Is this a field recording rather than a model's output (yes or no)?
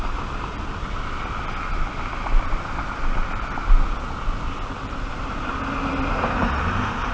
yes